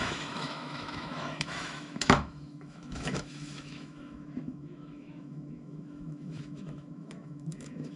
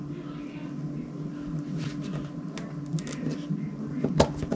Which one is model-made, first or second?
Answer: first